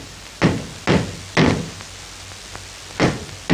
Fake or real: real